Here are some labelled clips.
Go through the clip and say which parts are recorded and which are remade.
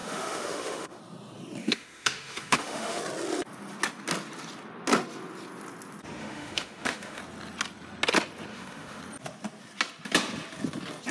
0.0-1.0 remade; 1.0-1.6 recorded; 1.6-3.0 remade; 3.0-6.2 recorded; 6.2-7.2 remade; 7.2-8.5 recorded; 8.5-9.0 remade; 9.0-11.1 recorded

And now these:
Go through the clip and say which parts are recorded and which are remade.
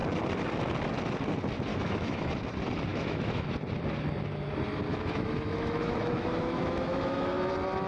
0.0-1.7 recorded; 1.7-2.3 remade; 2.3-2.9 recorded; 2.9-3.5 remade; 3.5-4.9 recorded; 4.9-7.5 remade; 7.5-7.9 recorded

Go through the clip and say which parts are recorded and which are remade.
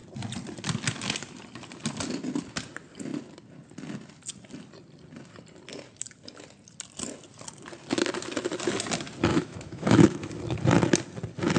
0.0-9.3 recorded; 9.3-10.3 remade; 10.3-11.6 recorded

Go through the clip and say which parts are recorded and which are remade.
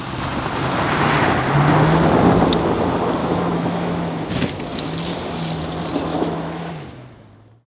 0.0-3.2 recorded; 3.2-4.3 remade; 4.3-6.1 recorded; 6.1-6.6 remade; 6.6-7.7 recorded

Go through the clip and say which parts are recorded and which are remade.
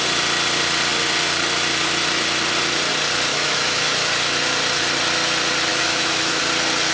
0.0-3.3 recorded; 3.3-4.1 remade; 4.1-5.7 recorded; 5.7-6.4 remade; 6.4-6.9 recorded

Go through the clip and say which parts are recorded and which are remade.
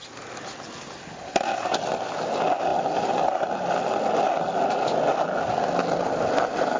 0.0-6.8 recorded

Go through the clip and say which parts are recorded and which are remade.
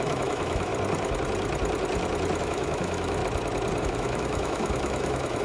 0.0-0.7 remade; 0.7-2.4 recorded; 2.4-3.2 remade; 3.2-3.8 recorded; 3.8-5.4 remade